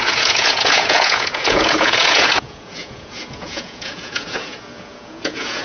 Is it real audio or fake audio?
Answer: fake